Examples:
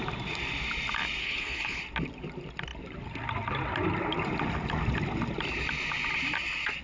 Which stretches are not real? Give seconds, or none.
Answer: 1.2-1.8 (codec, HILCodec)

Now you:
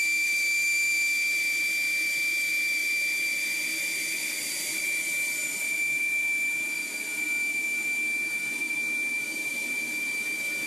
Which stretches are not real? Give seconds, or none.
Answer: none

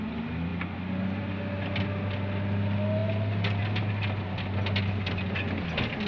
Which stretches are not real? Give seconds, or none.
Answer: 3.0-3.6 (vocoder, BigVGAN v2)

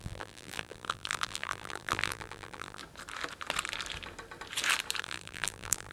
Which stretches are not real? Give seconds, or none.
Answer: 0.0-2.8 (vocoder, BigVGAN v2); 5.0-5.9

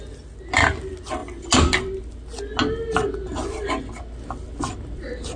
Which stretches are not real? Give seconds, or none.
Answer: none

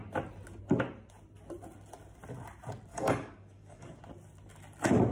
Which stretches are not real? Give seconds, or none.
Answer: 2.9-4.0 (codec, DAC)

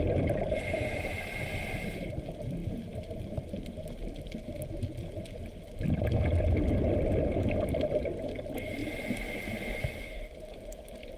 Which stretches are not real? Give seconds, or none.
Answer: 8.8-9.8 (vocoder, BigVGAN v2)